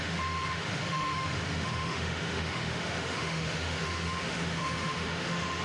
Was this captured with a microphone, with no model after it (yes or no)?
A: no